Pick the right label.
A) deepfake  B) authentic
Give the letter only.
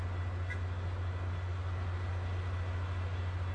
B